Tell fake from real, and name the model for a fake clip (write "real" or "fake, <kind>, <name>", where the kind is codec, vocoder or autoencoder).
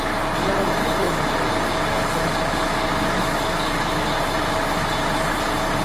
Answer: real